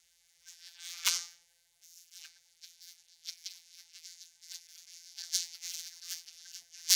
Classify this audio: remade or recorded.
remade